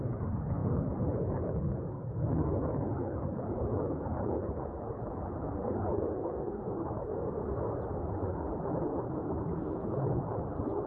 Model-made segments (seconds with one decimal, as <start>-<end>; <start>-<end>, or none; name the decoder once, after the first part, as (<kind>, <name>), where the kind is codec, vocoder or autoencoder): 0.0-7.1 (codec, HILCodec); 8.0-10.9